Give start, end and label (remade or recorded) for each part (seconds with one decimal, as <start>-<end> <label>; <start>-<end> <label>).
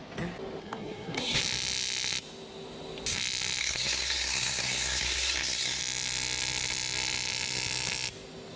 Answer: 0.0-0.6 recorded; 0.6-1.4 remade; 1.4-3.6 recorded; 3.6-5.8 remade; 5.8-8.6 recorded